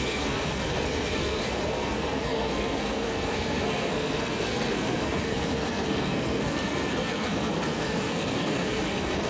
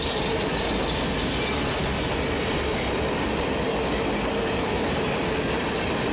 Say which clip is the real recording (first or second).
second